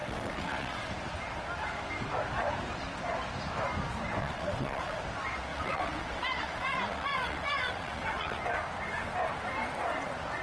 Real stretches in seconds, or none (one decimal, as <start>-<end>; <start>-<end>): 0.9-4.2; 5.0-5.5; 8.4-10.4